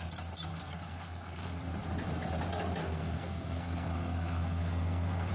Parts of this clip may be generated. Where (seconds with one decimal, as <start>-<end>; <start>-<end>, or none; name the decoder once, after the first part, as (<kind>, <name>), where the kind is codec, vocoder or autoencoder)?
0.5-1.6 (codec, SNAC); 2.8-5.3